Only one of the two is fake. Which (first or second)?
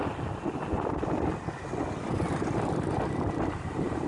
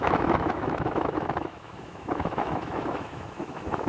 second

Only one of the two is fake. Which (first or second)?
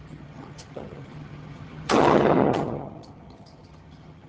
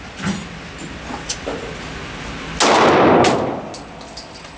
first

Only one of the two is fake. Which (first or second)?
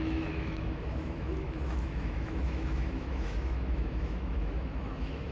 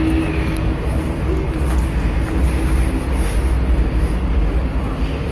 first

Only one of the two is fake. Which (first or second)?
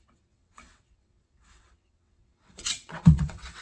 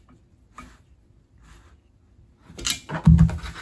first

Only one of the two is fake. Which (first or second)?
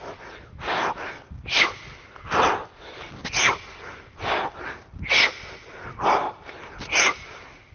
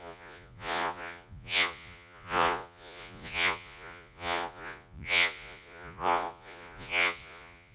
second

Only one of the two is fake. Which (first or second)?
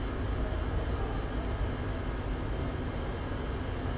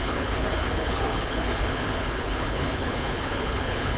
second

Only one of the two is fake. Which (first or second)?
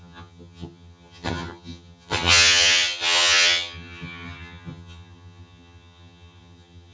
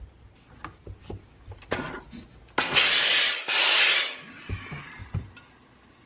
first